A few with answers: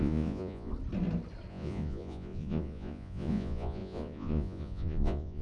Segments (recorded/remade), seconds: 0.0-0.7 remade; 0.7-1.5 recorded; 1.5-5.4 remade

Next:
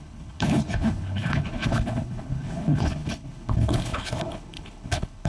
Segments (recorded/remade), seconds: 0.0-5.3 remade

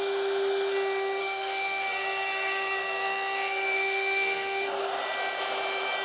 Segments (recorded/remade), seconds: 0.0-1.2 recorded; 1.2-4.8 remade; 4.8-6.0 recorded

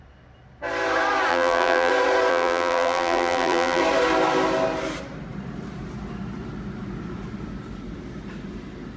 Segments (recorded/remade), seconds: 0.0-1.3 recorded; 1.3-1.9 remade; 1.9-2.3 recorded; 2.3-3.8 remade; 3.8-9.0 recorded

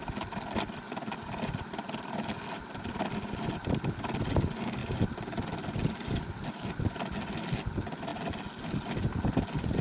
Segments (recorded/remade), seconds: 0.0-9.8 recorded

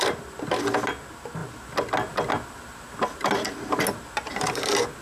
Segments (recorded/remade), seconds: 0.0-5.0 recorded